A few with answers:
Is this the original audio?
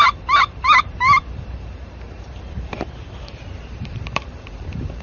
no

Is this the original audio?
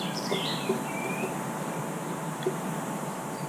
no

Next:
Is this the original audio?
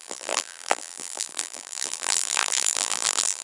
no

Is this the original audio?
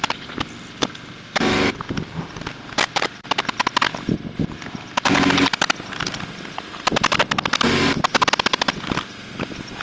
yes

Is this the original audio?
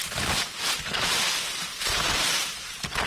no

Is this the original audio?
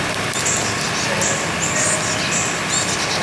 yes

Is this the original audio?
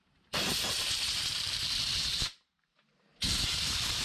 no